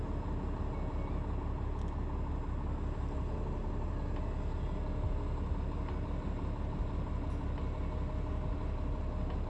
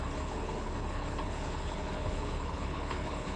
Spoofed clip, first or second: second